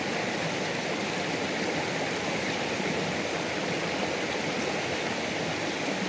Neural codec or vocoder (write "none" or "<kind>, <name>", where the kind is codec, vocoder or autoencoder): none